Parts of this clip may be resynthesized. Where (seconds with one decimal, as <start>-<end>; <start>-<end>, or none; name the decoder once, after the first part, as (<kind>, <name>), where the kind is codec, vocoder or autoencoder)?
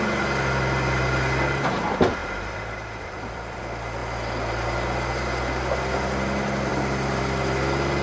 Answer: 2.2-3.6 (vocoder, BigVGAN v2); 6.7-7.2